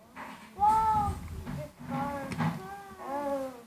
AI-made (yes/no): no